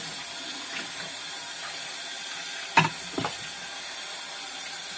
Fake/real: real